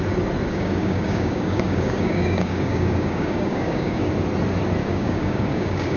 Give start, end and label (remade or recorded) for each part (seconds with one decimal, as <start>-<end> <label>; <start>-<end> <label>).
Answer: 0.0-0.5 recorded; 0.5-4.1 remade; 4.1-4.8 recorded; 4.8-6.0 remade